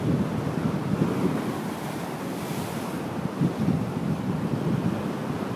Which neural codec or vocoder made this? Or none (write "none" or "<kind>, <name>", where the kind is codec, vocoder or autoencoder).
none